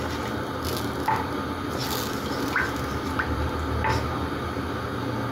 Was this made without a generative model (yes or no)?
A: yes